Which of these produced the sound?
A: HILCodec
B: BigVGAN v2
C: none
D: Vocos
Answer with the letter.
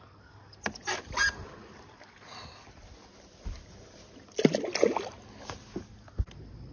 C